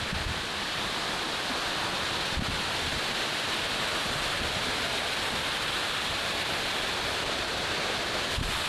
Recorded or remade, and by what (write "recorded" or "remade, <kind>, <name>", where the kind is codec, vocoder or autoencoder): recorded